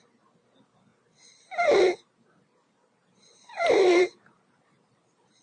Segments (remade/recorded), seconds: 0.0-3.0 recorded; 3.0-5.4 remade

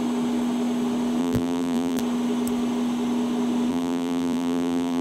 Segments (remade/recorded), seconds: 0.0-1.2 recorded; 1.2-2.0 remade; 2.0-3.7 recorded; 3.7-5.0 remade

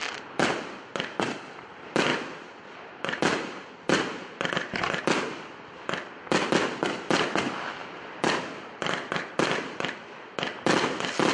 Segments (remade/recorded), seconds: 0.0-2.1 recorded; 2.1-5.0 remade; 5.0-11.3 recorded

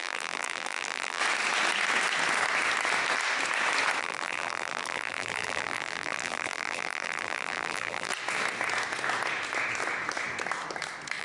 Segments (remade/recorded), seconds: 0.0-1.2 remade; 1.2-4.0 recorded; 4.0-8.1 remade; 8.1-11.2 recorded